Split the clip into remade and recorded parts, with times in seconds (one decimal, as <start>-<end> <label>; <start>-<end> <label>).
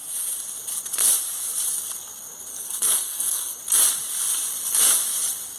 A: 0.0-2.5 recorded; 2.5-3.6 remade; 3.6-5.6 recorded